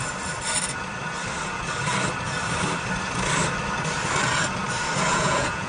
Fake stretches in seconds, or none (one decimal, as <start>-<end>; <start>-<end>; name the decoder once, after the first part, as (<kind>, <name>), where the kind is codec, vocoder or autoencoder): 5.1-5.7 (vocoder, Vocos)